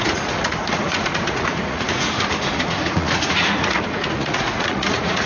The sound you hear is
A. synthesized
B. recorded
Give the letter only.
A